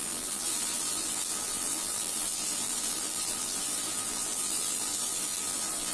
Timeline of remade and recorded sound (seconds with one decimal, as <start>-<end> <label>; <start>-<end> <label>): 0.0-5.9 remade